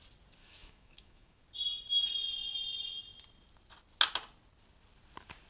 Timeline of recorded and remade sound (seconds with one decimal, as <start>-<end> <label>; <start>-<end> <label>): 0.0-0.4 recorded; 0.4-1.4 remade; 1.4-5.5 recorded